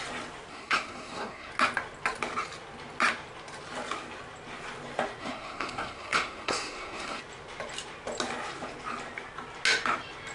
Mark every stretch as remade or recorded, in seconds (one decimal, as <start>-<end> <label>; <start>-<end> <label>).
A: 0.0-0.5 recorded; 0.5-1.5 remade; 1.5-5.2 recorded; 5.2-7.2 remade; 7.2-10.3 recorded